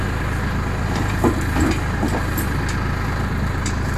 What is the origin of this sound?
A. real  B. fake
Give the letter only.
A